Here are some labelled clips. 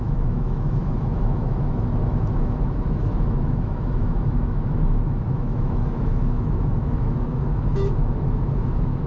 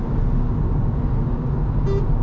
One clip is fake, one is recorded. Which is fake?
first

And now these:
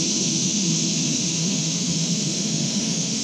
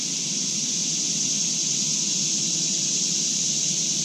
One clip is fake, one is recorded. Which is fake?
first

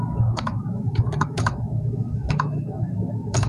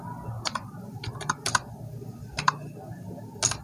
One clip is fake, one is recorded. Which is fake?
first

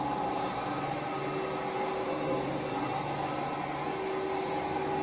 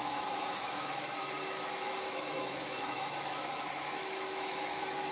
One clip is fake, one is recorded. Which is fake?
second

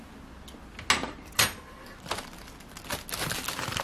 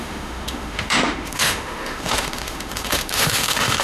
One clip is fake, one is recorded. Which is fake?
second